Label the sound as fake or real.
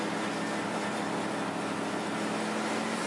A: real